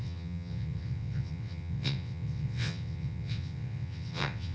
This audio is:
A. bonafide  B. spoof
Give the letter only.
B